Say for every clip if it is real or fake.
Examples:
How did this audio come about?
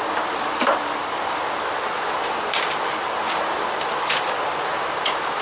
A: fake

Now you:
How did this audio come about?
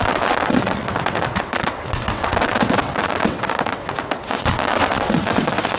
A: fake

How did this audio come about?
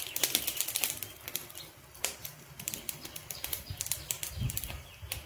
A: fake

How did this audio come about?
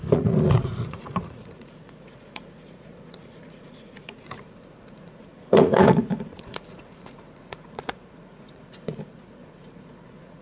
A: fake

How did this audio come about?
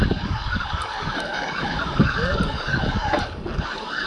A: fake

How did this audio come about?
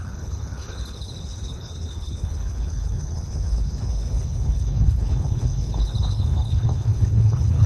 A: fake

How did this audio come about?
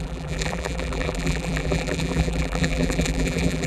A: fake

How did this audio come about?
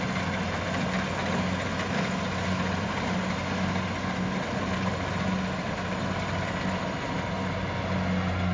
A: real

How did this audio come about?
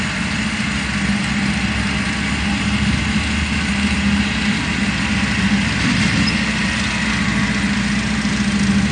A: real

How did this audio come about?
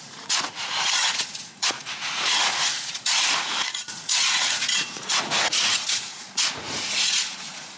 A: fake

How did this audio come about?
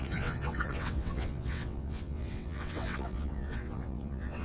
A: fake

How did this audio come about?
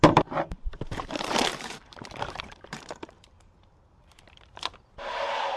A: fake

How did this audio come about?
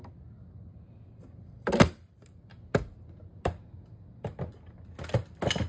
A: real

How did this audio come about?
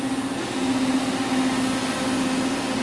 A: real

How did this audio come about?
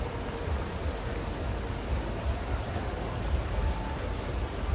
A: real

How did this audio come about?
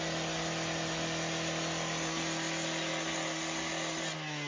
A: real